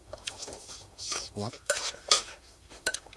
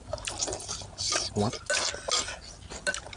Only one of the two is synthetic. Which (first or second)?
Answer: first